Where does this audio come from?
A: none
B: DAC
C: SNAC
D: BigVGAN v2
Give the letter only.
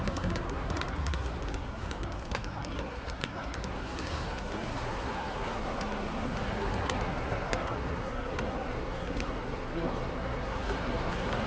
C